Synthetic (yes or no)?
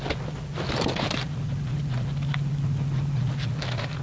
no